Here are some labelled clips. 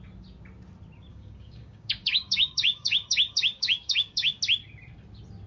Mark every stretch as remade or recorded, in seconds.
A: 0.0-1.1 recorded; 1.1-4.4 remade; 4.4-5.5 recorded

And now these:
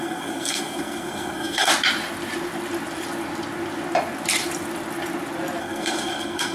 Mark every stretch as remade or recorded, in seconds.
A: 0.0-1.7 remade; 1.7-5.6 recorded; 5.6-6.5 remade

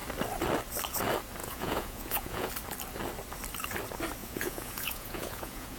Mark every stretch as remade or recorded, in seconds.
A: 0.0-1.4 recorded; 1.4-2.5 remade; 2.5-4.2 recorded; 4.2-5.8 remade

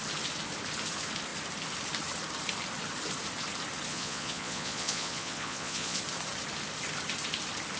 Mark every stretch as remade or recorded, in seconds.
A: 0.0-3.9 recorded; 3.9-6.0 remade; 6.0-7.8 recorded

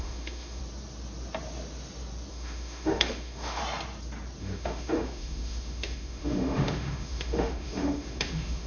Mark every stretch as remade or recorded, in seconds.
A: 0.0-0.6 remade; 0.6-2.3 recorded; 2.3-3.6 remade; 3.6-4.4 recorded; 4.4-8.7 remade

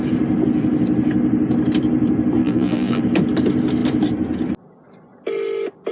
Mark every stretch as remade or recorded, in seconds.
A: 0.0-2.4 recorded; 2.4-3.0 remade; 3.0-5.9 recorded